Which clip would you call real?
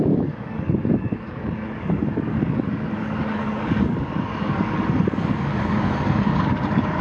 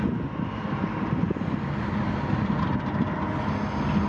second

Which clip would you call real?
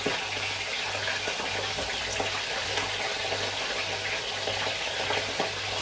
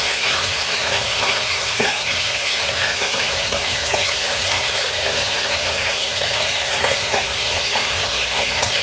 first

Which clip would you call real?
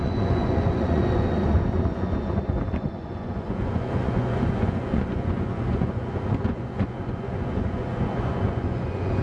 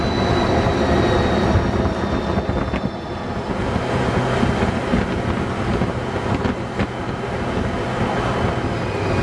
second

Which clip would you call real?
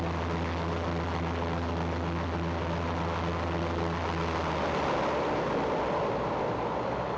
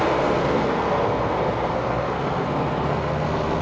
first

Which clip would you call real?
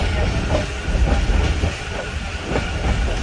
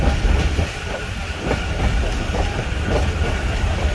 first